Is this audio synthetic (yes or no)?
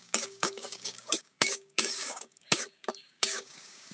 yes